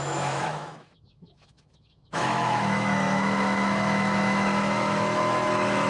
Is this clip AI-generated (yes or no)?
yes